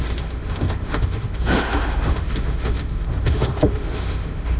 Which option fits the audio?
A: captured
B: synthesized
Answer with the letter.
B